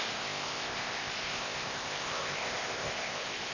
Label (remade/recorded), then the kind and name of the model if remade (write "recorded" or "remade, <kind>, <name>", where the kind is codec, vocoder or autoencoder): remade, codec, ZipCodec